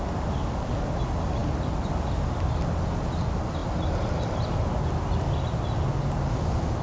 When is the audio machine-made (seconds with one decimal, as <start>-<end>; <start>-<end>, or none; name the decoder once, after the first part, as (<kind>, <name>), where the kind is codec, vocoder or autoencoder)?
none